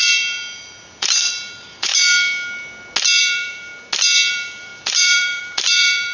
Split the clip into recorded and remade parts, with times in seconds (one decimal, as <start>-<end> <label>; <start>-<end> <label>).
0.0-1.9 remade; 1.9-3.2 recorded; 3.2-3.7 remade; 3.7-4.3 recorded; 4.3-6.1 remade